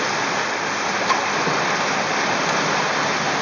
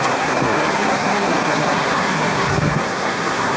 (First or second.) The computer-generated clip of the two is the second